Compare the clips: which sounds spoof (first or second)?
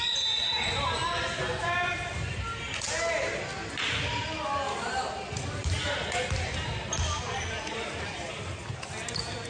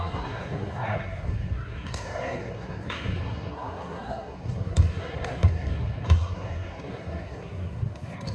second